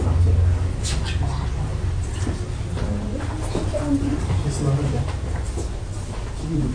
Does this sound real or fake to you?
real